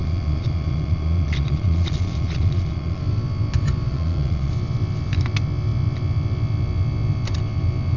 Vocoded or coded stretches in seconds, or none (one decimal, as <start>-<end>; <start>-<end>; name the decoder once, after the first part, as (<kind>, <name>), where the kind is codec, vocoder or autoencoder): 0.0-3.0 (vocoder, Vocos); 3.9-4.5